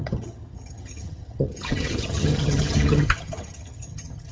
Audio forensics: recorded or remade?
remade